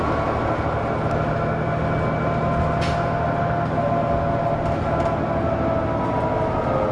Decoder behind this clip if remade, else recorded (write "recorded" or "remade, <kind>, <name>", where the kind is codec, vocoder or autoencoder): recorded